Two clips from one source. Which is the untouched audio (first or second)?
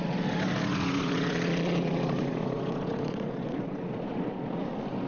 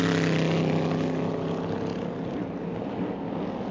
second